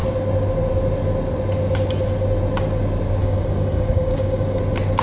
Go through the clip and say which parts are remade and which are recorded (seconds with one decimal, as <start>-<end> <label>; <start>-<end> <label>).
0.0-3.2 recorded; 3.2-4.6 remade; 4.6-5.0 recorded